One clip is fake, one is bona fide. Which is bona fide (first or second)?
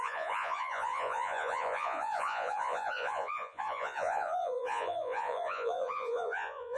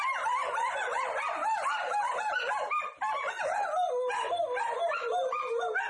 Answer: second